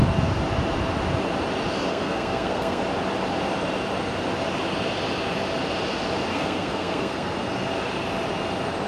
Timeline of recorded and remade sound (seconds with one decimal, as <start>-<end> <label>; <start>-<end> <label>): 0.0-1.9 recorded; 1.9-2.8 remade; 2.8-6.3 recorded; 6.3-7.3 remade; 7.3-8.9 recorded